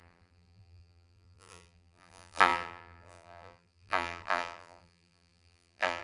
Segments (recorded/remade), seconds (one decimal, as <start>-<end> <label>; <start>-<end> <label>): 0.0-6.0 remade